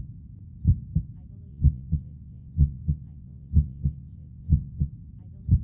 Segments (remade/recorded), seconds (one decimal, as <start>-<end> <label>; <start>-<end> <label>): 0.0-1.5 recorded; 1.5-4.9 remade; 4.9-5.6 recorded